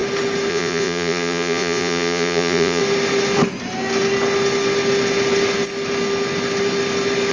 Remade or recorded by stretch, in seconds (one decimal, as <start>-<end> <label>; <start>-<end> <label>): 0.0-0.5 recorded; 0.5-2.8 remade; 2.8-7.3 recorded